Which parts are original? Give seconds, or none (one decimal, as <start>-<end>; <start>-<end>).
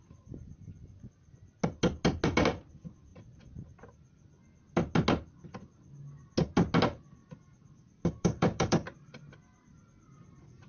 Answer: 0.0-7.2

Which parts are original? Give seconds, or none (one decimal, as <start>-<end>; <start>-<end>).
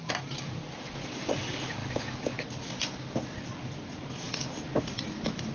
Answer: 0.8-5.5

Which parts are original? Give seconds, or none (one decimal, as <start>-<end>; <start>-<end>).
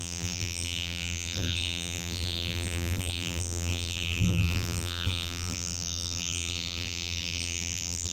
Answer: none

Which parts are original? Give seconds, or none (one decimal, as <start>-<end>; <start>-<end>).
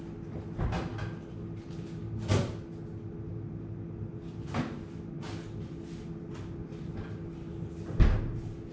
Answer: 0.0-8.7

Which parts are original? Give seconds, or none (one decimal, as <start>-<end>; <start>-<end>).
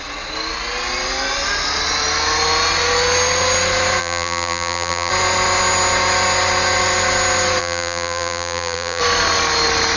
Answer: 0.0-4.0; 5.1-7.6; 9.0-10.0